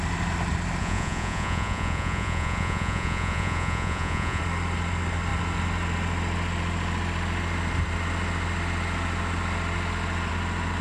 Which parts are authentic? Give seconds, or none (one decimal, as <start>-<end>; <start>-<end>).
0.0-0.8; 4.4-10.8